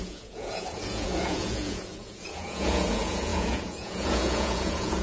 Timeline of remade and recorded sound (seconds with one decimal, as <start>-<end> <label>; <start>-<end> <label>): 0.0-5.0 remade